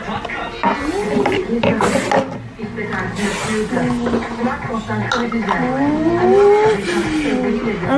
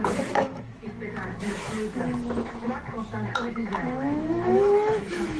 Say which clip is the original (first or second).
first